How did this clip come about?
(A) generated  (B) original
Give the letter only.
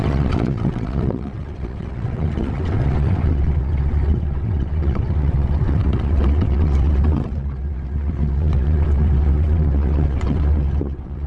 A